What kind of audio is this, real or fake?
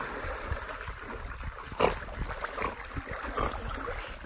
real